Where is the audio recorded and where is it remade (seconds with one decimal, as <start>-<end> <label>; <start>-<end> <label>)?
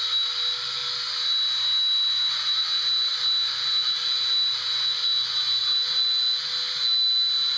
0.0-7.6 recorded